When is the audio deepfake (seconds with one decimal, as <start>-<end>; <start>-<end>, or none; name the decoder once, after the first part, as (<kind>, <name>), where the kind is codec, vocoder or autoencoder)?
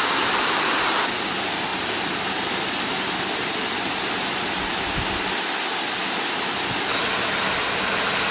none